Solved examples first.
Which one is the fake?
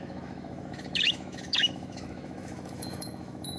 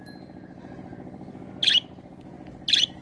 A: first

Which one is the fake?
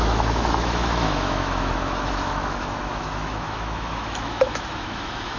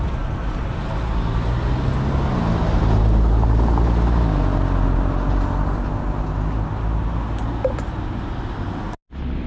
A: first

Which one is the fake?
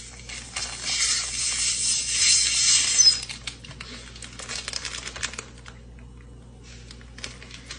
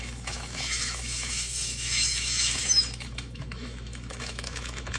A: second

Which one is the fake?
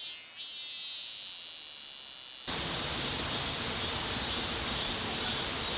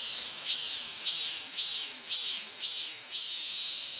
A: second